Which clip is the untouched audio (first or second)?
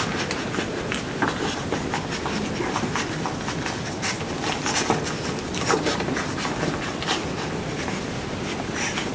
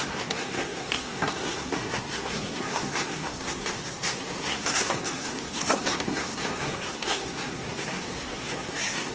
first